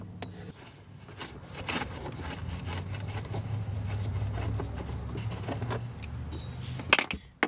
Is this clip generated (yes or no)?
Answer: no